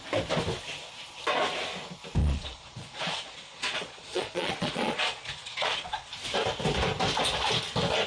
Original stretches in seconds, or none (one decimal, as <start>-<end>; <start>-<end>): 0.0-2.2; 6.1-8.1